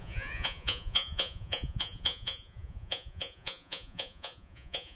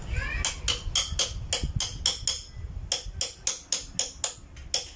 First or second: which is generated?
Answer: first